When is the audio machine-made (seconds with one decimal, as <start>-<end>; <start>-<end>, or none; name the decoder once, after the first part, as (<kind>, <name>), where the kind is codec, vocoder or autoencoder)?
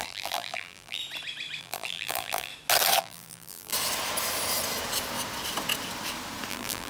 0.0-1.0 (vocoder, BigVGAN v2); 1.6-2.5; 3.0-3.7; 6.5-6.9